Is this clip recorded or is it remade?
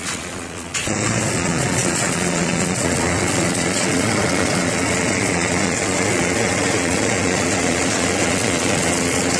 remade